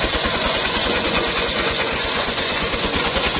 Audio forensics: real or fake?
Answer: fake